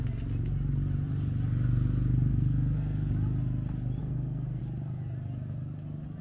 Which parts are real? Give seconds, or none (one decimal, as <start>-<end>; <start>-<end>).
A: 0.0-2.3; 3.1-4.0; 4.6-6.2